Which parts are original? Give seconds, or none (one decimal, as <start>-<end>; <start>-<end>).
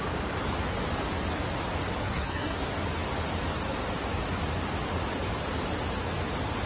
0.0-2.0; 2.6-6.7